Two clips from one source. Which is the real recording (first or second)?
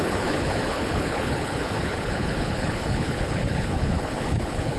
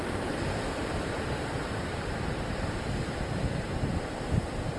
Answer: second